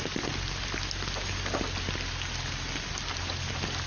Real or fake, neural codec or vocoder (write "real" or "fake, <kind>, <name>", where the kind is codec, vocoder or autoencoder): real